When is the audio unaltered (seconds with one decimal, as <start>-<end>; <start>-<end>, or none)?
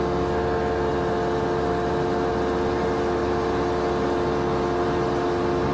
0.0-5.7